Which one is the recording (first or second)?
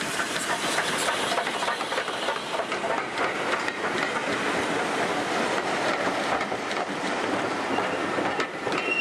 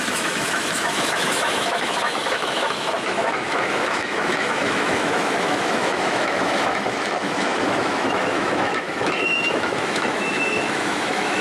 first